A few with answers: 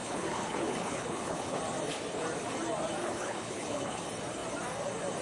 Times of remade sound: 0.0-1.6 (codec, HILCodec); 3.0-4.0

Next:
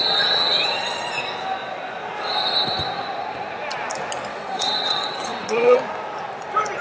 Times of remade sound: 0.0-1.0 (vocoder, WaveNeXt); 4.3-5.8